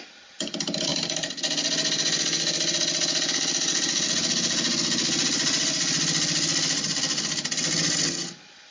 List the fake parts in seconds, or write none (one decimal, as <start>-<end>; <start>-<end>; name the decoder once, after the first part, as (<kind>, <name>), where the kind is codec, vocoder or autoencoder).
none